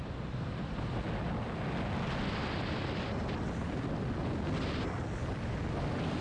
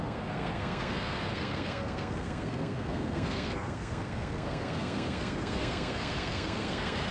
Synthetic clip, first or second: second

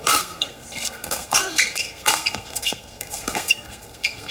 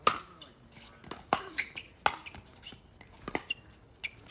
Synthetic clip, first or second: first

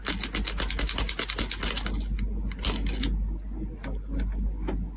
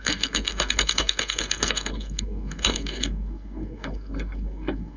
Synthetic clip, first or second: second